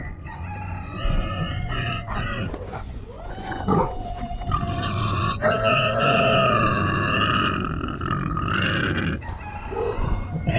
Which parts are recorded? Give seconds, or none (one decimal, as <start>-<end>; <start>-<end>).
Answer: 6.4-9.5